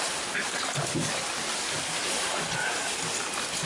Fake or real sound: real